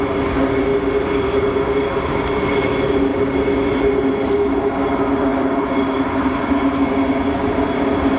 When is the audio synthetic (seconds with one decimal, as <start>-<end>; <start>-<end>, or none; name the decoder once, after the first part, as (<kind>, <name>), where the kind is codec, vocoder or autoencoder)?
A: none